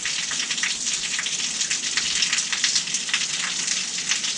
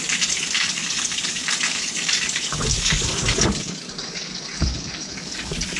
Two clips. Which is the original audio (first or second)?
first